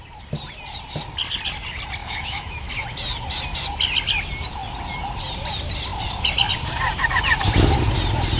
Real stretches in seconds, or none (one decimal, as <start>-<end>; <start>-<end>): 0.0-2.0; 2.7-8.4